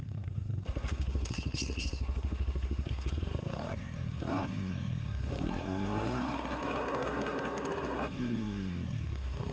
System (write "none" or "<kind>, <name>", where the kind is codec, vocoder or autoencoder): codec, SNAC